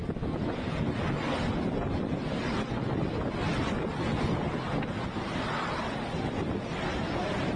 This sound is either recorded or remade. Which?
recorded